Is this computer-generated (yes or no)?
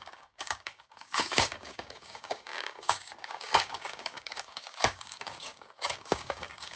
yes